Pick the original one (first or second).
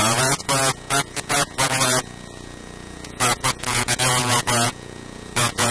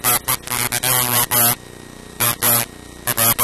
second